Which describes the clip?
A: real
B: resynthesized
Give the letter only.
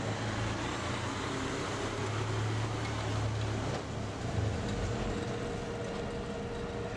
A